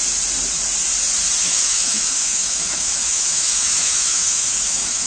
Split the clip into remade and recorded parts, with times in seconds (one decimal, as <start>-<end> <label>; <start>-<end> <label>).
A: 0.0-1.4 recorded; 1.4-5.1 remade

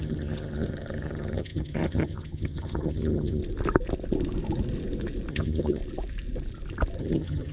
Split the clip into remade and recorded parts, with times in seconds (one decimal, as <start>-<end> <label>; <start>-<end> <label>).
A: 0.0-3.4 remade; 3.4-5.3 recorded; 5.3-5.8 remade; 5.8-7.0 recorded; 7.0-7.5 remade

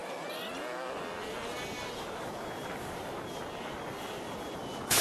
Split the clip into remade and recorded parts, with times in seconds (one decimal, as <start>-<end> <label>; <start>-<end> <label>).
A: 0.0-5.0 recorded